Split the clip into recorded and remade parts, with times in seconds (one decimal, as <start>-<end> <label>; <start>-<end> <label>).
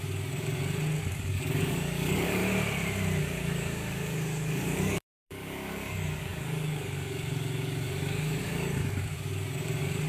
0.0-0.6 remade; 0.6-1.1 recorded; 1.1-2.4 remade; 2.4-3.2 recorded; 3.2-10.1 remade